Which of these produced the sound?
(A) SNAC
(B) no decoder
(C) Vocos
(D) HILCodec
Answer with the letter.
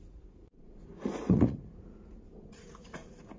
C